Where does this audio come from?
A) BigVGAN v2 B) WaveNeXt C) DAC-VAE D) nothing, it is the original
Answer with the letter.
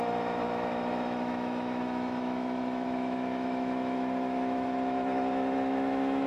C